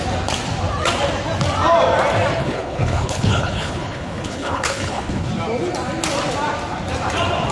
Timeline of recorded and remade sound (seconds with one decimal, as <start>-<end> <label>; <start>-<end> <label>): 0.0-2.4 recorded; 2.4-5.3 remade; 5.3-7.5 recorded

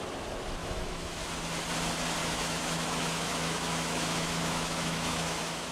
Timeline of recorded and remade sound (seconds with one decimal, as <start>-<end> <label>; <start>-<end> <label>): 0.0-0.6 recorded; 0.6-1.3 remade; 1.3-2.2 recorded; 2.2-5.7 remade